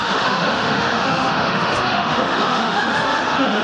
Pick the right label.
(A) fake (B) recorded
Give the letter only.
A